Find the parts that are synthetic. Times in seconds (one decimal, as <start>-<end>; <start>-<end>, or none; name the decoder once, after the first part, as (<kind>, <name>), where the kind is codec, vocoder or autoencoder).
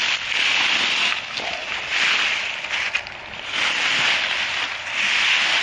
none